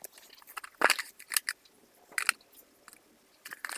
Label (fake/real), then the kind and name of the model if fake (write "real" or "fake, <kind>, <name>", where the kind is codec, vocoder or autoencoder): real